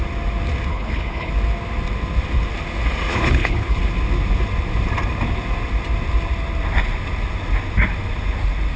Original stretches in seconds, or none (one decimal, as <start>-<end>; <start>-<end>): 0.0-0.7; 1.3-3.1; 3.8-8.8